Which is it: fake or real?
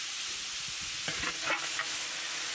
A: real